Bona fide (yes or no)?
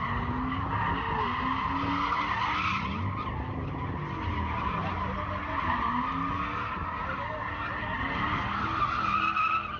yes